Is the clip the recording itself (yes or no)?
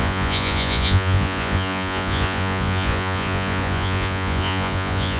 no